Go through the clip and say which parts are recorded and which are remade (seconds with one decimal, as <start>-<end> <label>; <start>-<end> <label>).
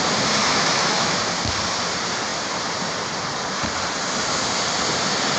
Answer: 0.0-0.4 recorded; 0.4-1.2 remade; 1.2-5.4 recorded